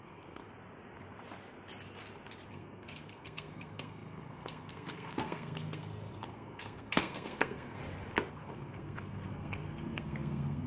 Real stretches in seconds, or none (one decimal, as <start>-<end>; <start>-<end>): 0.4-2.5; 7.8-8.3